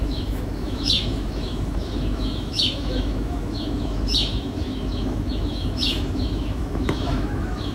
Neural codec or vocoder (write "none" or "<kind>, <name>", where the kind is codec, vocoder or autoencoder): autoencoder, DAC-VAE